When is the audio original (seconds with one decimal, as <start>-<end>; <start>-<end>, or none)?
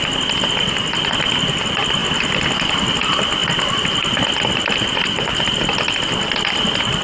0.0-7.0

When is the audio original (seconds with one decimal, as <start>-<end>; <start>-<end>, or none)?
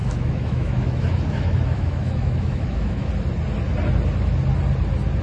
3.1-5.2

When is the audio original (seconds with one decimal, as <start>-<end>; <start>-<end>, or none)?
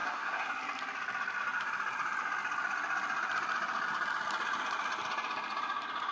0.5-6.1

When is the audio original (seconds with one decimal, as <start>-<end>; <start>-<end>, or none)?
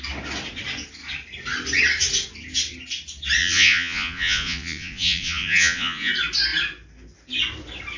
0.0-3.4; 6.1-8.0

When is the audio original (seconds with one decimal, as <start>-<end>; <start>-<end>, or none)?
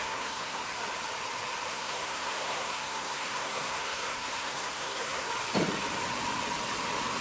0.6-1.7; 5.3-7.2